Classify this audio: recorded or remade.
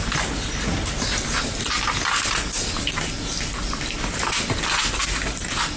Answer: recorded